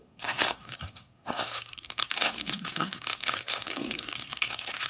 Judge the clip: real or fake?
fake